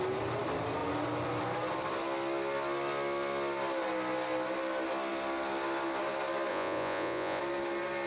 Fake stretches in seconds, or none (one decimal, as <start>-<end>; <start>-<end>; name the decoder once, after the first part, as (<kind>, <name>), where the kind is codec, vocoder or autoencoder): 6.5-7.4 (vocoder, Vocos)